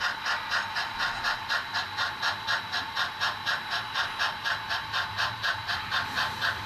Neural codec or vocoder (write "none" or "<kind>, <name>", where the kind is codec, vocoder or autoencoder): vocoder, BigVGAN v2